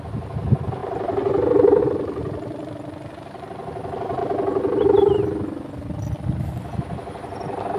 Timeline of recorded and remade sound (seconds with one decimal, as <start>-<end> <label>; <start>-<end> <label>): 0.0-2.2 recorded; 2.2-3.5 remade; 3.5-7.8 recorded